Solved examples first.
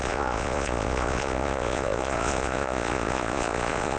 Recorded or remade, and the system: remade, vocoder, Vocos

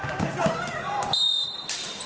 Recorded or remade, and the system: recorded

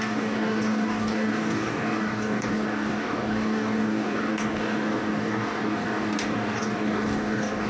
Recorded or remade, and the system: remade, codec, DAC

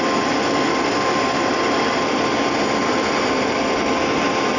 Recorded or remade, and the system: recorded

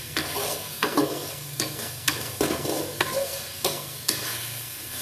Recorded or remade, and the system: remade, codec, SNAC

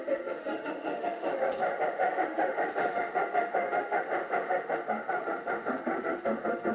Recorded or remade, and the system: remade, autoencoder, DAC-VAE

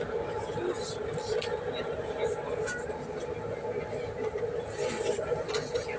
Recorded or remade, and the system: recorded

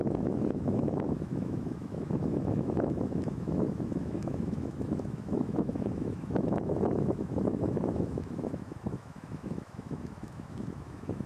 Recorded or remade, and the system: remade, autoencoder, DAC-VAE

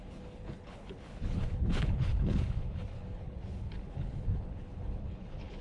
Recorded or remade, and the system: remade, codec, HILCodec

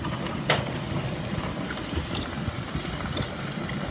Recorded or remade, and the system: recorded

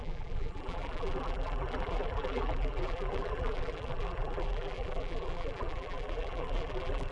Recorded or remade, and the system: remade, vocoder, BigVGAN v2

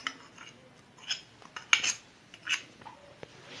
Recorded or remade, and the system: recorded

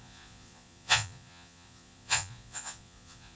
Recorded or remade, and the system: remade, vocoder, Vocos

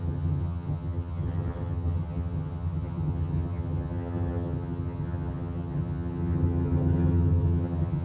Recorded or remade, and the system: remade, vocoder, HiFi-GAN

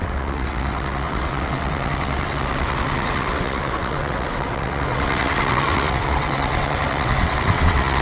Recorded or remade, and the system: remade, vocoder, WaveNeXt